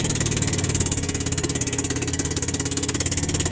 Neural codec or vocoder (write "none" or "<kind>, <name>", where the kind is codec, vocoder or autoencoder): codec, SNAC